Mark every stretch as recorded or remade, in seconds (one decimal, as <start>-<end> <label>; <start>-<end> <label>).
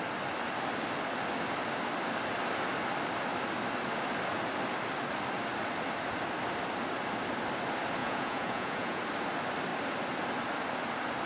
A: 0.0-8.0 recorded; 8.0-9.0 remade; 9.0-11.3 recorded